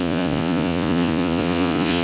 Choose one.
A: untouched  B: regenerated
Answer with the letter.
B